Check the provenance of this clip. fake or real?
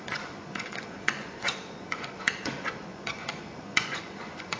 fake